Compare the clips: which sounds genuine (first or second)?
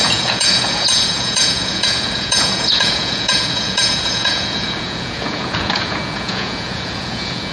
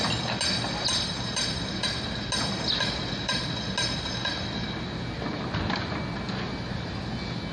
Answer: second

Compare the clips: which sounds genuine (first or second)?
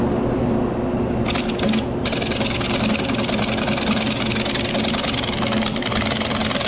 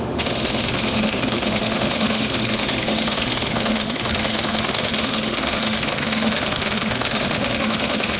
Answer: first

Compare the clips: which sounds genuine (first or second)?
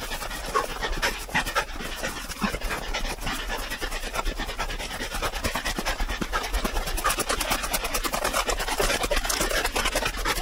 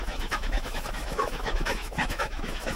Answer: first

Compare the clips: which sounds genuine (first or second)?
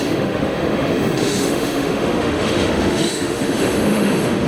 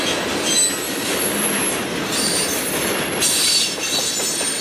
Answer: second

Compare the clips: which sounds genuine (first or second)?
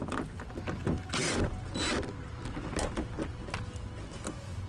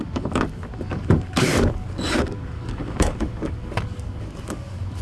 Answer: first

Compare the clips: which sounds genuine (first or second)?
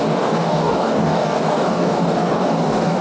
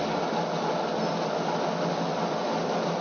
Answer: second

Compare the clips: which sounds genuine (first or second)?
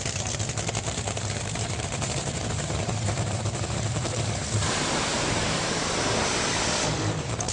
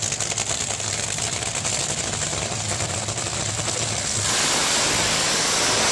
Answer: second